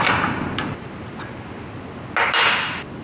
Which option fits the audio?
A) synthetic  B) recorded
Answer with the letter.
B